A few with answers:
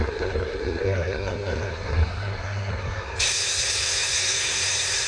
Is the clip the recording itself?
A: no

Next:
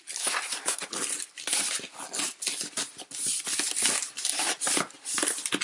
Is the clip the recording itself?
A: yes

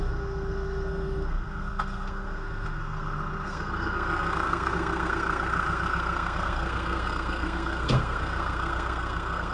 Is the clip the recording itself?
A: no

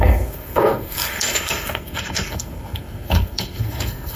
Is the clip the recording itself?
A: no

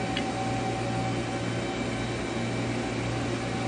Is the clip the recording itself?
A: yes